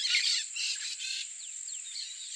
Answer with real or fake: fake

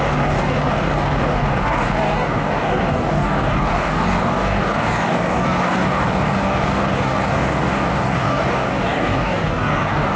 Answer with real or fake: fake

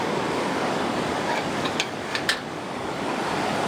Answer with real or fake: fake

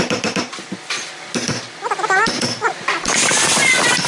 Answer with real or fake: real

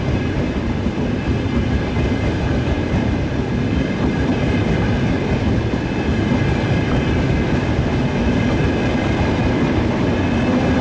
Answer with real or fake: real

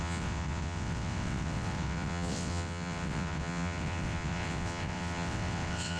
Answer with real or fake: fake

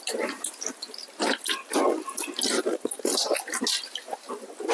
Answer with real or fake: real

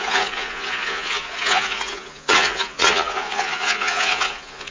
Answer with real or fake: fake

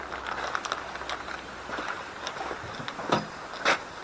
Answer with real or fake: real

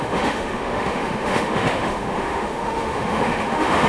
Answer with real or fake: fake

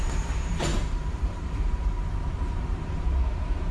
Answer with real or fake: fake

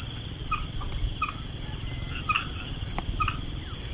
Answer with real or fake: fake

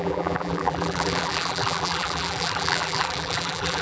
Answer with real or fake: fake